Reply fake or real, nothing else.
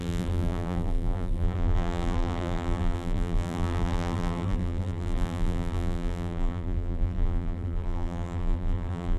fake